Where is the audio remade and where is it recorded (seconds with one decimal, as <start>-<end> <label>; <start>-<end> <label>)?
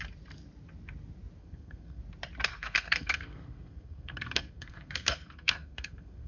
0.0-1.4 recorded; 1.4-2.0 remade; 2.0-2.5 recorded; 2.5-6.3 remade